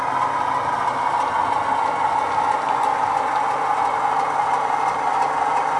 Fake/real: real